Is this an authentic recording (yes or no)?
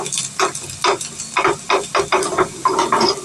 yes